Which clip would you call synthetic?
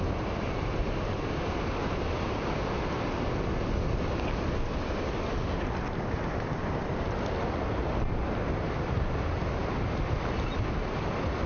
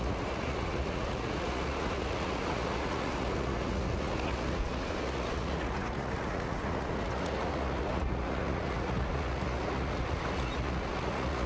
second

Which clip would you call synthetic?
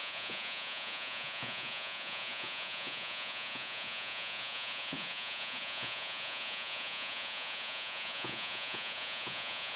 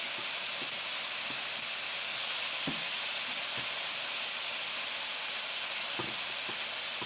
first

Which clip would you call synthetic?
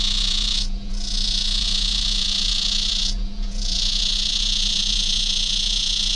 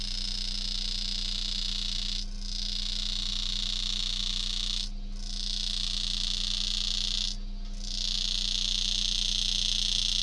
first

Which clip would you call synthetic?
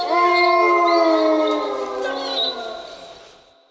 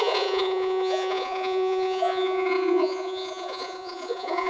second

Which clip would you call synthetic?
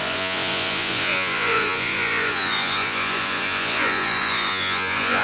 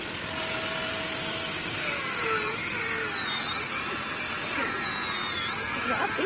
first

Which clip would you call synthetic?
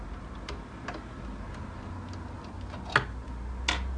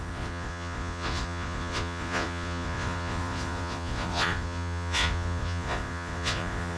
second